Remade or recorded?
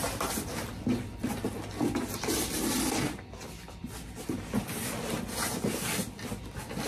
recorded